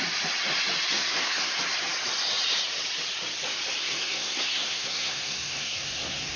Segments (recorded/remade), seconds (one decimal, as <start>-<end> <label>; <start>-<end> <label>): 0.0-0.9 recorded; 0.9-1.5 remade; 1.5-3.8 recorded; 3.8-6.4 remade